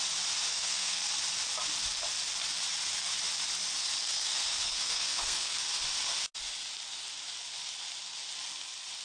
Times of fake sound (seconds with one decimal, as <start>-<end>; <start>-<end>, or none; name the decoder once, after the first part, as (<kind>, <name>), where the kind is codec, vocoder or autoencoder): 0.5-1.1 (codec, SNAC); 4.0-5.6